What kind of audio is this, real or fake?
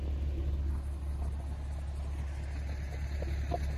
real